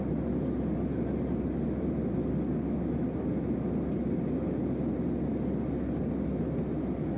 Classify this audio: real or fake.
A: real